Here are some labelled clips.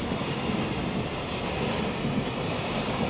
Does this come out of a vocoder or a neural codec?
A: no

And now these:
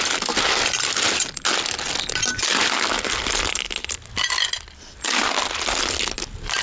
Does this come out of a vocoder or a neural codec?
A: no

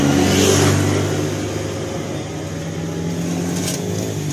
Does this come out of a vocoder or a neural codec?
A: no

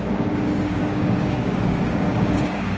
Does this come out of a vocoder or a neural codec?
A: yes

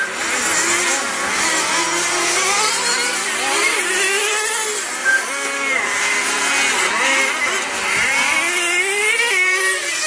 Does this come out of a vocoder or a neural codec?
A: no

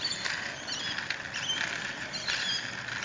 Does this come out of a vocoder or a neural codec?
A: no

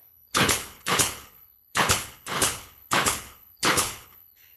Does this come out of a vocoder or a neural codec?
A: yes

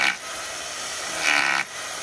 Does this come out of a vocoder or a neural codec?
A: yes